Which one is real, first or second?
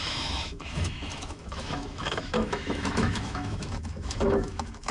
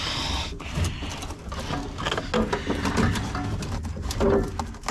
second